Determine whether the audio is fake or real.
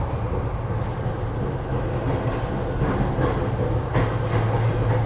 real